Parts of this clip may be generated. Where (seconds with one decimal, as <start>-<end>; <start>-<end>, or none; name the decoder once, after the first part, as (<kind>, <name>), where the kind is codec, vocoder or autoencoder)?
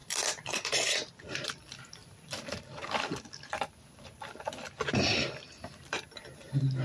0.0-1.5 (vocoder, BigVGAN v2); 2.0-6.1